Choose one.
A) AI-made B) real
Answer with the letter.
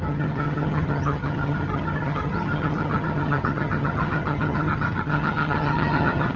A